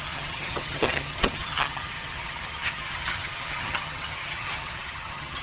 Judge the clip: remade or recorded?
remade